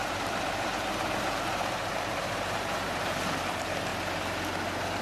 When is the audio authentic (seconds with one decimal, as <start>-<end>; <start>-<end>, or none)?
3.9-5.0